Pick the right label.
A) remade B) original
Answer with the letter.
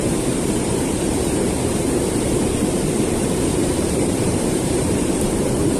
A